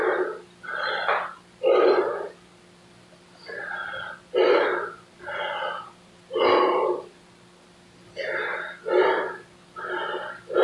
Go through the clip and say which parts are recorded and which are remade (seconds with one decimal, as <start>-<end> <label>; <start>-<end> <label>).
0.0-10.6 recorded